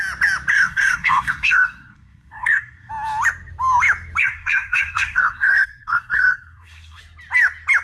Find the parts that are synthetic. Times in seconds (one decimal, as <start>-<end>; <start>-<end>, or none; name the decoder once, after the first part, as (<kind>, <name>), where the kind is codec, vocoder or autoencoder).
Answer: 0.5-2.9 (codec, SNAC); 4.2-7.0